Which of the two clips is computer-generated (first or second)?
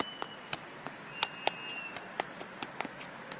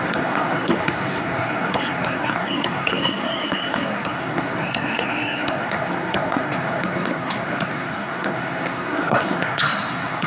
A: second